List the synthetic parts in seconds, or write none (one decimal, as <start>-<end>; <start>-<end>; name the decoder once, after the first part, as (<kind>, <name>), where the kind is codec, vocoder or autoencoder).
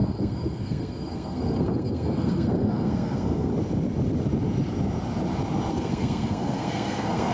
0.0-3.5 (codec, SNAC); 5.7-7.3